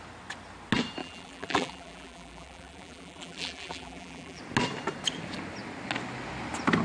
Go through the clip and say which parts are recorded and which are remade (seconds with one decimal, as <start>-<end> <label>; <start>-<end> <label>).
0.0-1.0 recorded; 1.0-4.4 remade; 4.4-6.8 recorded